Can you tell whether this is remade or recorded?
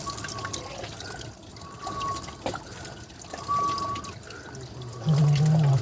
recorded